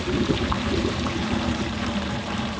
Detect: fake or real fake